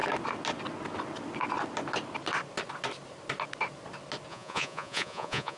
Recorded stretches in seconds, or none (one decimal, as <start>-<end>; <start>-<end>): 0.0-4.3